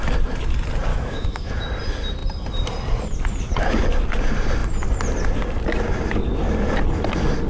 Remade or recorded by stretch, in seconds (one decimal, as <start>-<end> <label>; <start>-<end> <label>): 0.0-0.9 recorded; 0.9-1.6 remade; 1.6-7.5 recorded

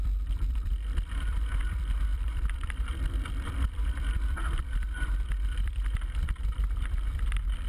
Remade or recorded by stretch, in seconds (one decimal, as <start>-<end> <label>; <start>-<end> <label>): 0.0-7.7 remade

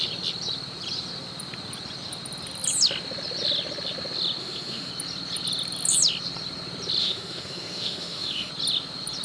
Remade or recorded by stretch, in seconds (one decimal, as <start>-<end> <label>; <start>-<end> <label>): 0.0-4.4 recorded; 4.4-4.9 remade; 4.9-7.0 recorded; 7.0-8.5 remade; 8.5-9.2 recorded